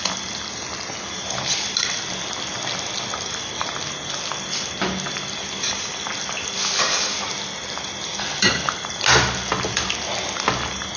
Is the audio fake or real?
real